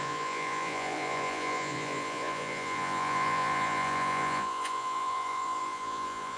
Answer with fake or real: fake